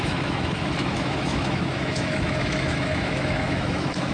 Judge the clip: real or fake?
fake